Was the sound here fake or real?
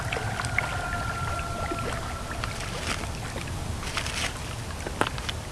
real